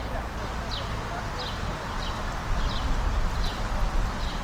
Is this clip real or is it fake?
real